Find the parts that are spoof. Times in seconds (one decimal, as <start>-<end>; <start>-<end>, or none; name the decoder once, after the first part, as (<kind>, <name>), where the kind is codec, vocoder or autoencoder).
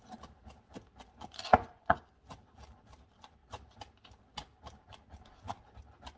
1.5-2.0 (vocoder, Vocos)